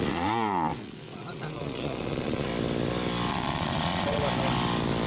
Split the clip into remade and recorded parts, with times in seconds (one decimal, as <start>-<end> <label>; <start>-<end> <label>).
0.0-2.5 remade; 2.5-3.3 recorded; 3.3-4.2 remade; 4.2-5.1 recorded